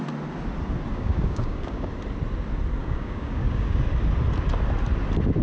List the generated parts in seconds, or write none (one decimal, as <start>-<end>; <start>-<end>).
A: 0.9-1.9; 2.8-3.8